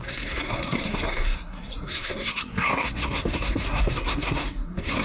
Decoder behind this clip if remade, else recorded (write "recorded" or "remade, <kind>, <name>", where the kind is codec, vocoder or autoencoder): remade, codec, SNAC